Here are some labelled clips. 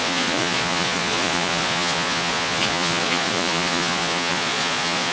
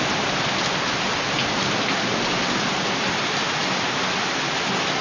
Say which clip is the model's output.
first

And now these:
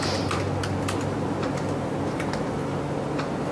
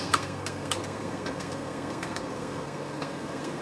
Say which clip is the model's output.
second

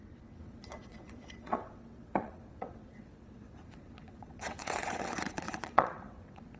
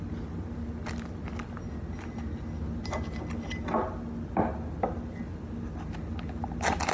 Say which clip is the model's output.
first